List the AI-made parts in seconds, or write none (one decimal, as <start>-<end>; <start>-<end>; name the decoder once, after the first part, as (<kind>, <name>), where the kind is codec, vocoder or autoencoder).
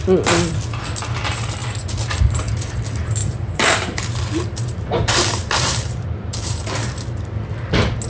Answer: 3.2-7.0 (vocoder, BigVGAN v2)